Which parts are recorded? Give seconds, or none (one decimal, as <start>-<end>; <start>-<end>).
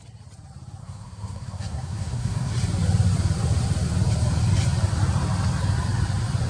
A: 0.0-0.8; 2.5-6.5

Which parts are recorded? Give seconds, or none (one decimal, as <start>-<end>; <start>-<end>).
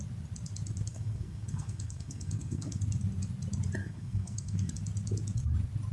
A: 0.0-0.9; 2.8-3.8; 4.7-5.9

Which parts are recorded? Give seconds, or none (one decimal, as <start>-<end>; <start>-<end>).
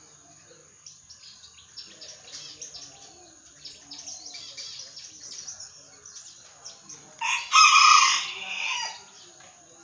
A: 0.0-9.8